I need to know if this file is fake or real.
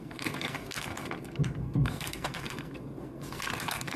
fake